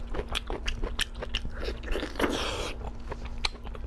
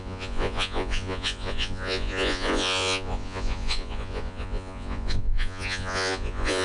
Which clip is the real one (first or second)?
first